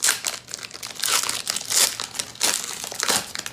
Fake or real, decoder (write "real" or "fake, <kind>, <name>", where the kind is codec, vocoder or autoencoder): real